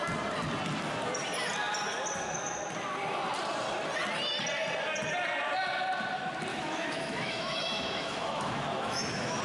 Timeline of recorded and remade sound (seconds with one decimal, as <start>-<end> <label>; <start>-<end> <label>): 0.0-6.5 recorded; 6.5-9.4 remade